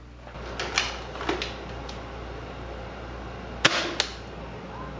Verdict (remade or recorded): recorded